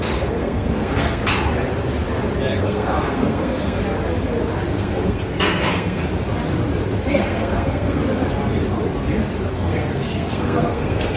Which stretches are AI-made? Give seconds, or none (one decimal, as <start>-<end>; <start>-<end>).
0.0-1.2; 2.6-3.8; 4.7-6.0; 7.1-8.0; 9.5-11.2